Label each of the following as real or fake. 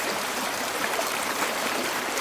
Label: fake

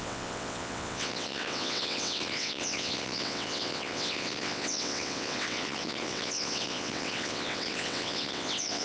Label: fake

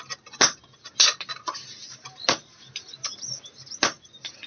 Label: real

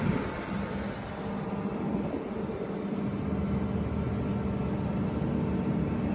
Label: real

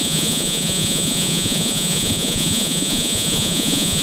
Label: fake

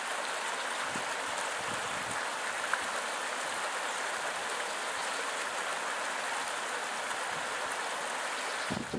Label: real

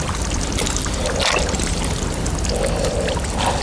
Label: real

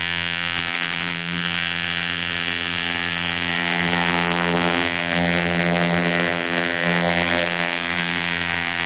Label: fake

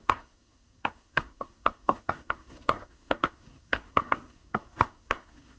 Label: fake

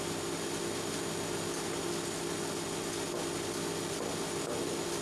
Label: fake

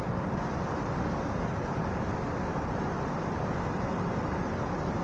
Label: real